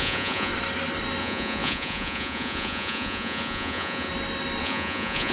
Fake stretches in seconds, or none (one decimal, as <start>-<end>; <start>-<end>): 0.0-0.5; 1.2-4.1; 4.6-5.3